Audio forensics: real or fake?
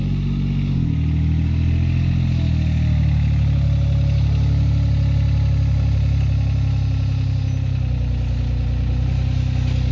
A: real